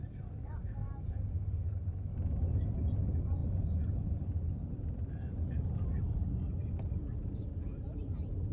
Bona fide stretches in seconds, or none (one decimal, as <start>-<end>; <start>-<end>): 0.0-8.5